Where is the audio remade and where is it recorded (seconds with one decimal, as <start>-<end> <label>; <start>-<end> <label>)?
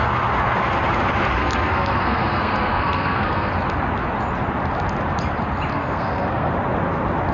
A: 0.0-1.4 recorded; 1.4-3.5 remade; 3.5-5.7 recorded; 5.7-6.5 remade; 6.5-7.3 recorded